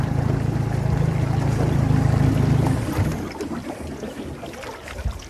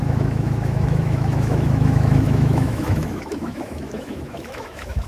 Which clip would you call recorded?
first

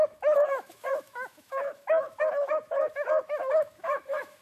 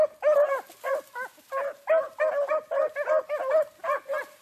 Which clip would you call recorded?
second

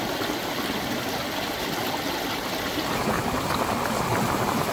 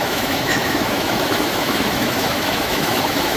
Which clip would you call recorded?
first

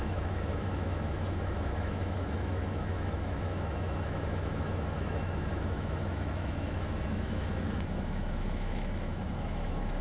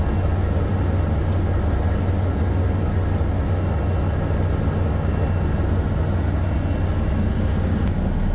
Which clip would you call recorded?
second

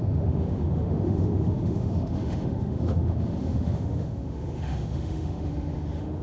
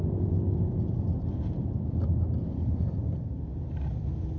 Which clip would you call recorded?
second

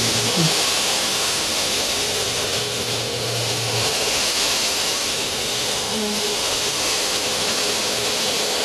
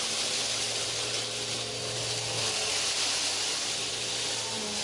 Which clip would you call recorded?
second